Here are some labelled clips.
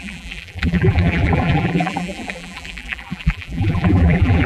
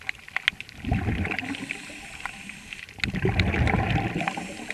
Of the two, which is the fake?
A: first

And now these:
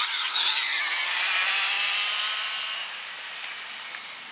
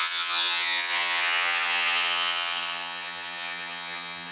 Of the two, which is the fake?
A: second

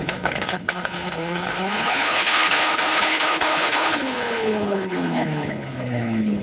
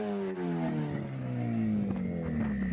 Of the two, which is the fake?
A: first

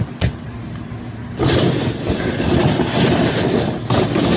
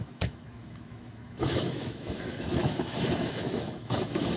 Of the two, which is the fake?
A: second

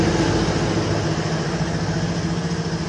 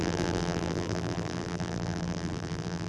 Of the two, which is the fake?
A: second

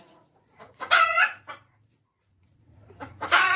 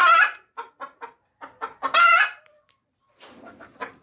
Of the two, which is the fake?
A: first